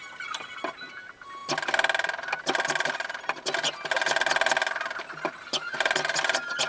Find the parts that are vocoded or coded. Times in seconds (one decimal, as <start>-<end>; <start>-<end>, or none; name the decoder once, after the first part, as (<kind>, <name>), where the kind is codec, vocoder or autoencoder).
none